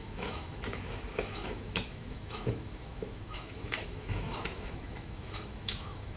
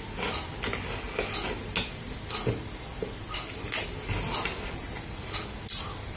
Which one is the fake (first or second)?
first